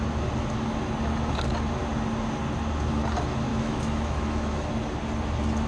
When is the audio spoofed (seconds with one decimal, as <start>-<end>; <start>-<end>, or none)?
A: 3.5-4.7